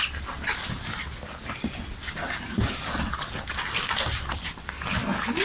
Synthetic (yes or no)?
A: no